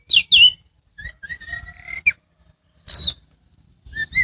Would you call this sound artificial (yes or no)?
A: no